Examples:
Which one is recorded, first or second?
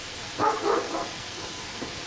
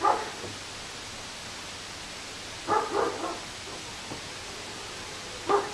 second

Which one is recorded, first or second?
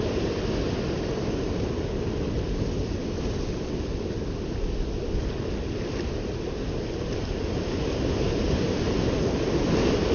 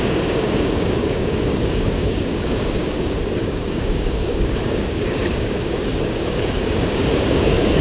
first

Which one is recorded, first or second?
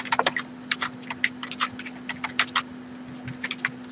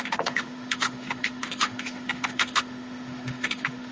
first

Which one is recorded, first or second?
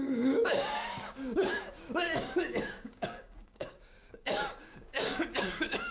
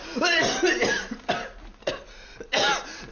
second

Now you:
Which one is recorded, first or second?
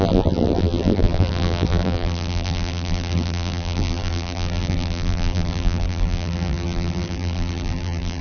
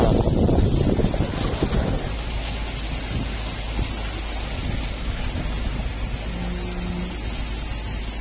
second